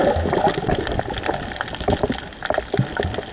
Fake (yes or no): no